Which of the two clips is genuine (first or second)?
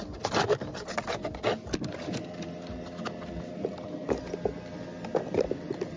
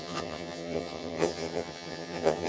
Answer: first